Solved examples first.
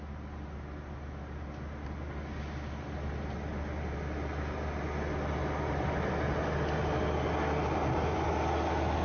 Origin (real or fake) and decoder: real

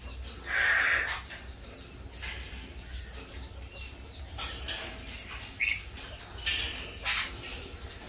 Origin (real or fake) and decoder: real